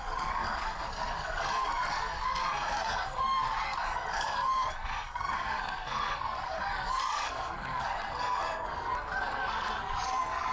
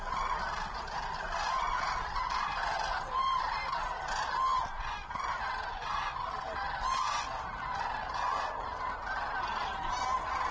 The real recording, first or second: second